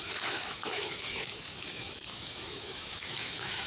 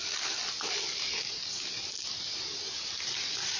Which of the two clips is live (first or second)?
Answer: second